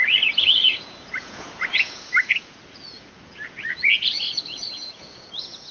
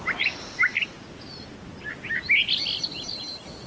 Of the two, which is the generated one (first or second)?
first